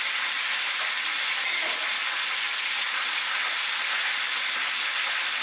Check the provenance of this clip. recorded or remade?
recorded